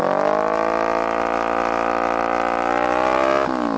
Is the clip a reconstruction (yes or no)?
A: no